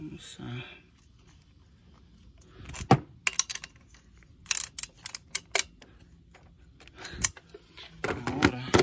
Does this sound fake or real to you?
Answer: real